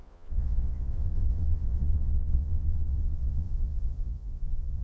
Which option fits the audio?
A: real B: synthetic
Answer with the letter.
B